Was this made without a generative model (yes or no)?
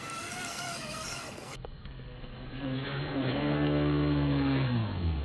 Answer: no